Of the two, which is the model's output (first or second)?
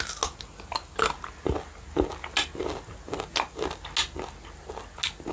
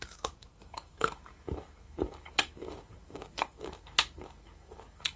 second